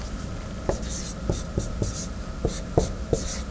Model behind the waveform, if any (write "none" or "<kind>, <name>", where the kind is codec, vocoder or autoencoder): none